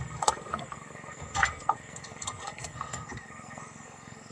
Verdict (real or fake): fake